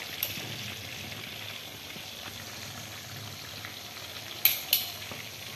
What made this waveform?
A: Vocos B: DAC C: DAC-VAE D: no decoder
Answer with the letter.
D